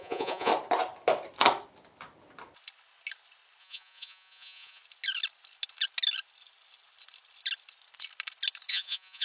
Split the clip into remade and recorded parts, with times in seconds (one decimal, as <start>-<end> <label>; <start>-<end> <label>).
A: 0.0-0.5 remade; 0.5-3.6 recorded; 3.6-4.8 remade; 4.8-8.7 recorded; 8.7-9.2 remade